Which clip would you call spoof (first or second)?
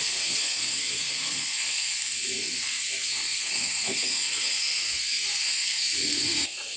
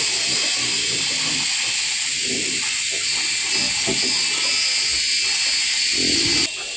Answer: first